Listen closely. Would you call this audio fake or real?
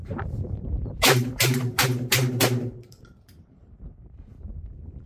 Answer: fake